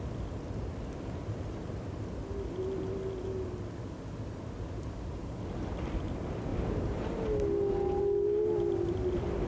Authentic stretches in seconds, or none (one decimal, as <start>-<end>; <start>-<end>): 0.0-9.5